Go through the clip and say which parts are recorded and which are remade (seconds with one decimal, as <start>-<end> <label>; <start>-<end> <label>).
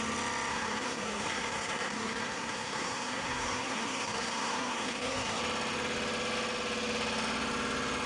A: 0.0-0.5 recorded; 0.5-5.4 remade; 5.4-8.1 recorded